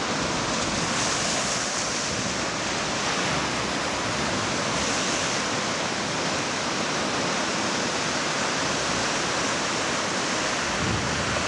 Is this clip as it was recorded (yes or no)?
yes